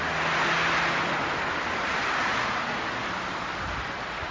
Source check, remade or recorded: recorded